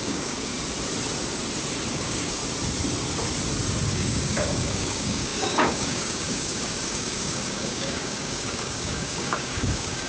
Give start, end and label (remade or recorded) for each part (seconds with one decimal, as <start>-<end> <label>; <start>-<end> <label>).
0.0-0.5 remade; 0.5-1.9 recorded; 1.9-2.4 remade; 2.4-3.9 recorded; 3.9-10.1 remade